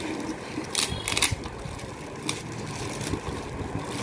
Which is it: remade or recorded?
recorded